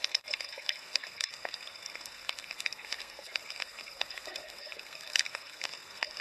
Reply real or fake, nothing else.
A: fake